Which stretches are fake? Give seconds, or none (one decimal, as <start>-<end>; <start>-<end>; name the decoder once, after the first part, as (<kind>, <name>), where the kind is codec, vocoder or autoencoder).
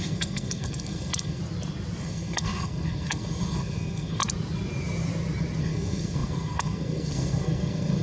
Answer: 0.0-1.4 (codec, SNAC); 2.0-4.2; 5.6-8.0